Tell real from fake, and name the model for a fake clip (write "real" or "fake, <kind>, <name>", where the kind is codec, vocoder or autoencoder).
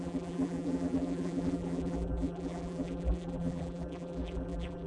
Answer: fake, vocoder, BigVGAN v2